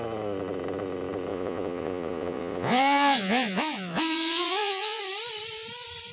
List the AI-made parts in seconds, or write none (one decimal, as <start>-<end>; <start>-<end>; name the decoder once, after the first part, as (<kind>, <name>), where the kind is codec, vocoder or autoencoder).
1.3-5.0 (vocoder, Vocos)